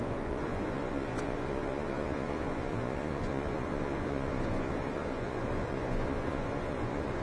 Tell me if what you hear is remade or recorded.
remade